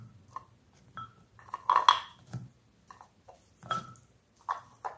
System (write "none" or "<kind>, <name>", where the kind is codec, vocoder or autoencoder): none